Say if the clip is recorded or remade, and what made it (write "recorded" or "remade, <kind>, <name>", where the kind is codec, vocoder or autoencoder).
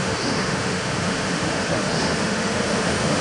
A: remade, autoencoder, DAC-VAE